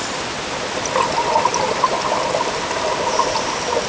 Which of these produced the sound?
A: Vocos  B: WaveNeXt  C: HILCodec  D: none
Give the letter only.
D